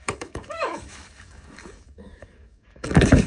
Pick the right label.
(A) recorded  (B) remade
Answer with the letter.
B